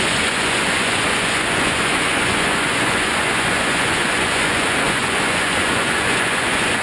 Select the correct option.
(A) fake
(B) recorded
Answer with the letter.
A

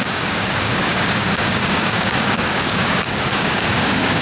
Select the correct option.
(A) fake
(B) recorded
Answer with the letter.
A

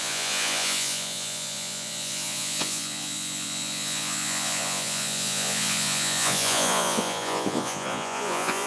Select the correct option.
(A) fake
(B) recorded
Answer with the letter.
A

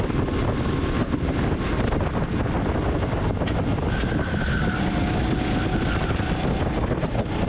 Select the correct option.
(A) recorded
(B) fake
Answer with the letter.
A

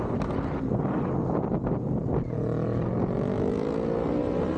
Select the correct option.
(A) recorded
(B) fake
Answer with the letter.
A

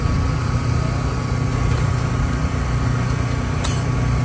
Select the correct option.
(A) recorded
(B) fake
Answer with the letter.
A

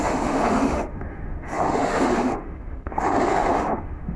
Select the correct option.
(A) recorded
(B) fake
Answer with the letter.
B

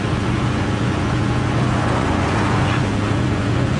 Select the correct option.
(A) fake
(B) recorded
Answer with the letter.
A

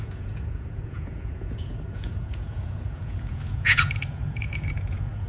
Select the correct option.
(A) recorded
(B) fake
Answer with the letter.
B